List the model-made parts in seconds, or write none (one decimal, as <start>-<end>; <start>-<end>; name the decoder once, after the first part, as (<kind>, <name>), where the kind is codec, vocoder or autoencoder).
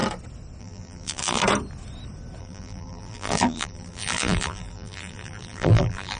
0.6-1.4 (vocoder, BigVGAN v2); 2.4-6.2